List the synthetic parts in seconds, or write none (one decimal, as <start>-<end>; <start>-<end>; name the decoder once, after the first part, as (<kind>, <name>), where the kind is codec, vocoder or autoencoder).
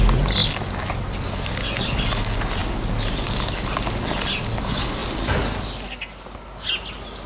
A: none